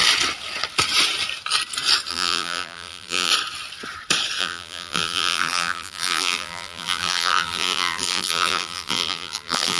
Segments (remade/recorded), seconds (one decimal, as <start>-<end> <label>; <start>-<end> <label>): 0.0-2.1 recorded; 2.1-3.3 remade; 3.3-4.4 recorded; 4.4-9.8 remade